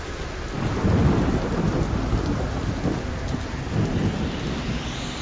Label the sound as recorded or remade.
recorded